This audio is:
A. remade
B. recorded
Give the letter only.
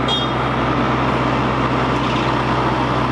B